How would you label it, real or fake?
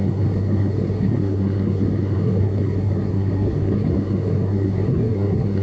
fake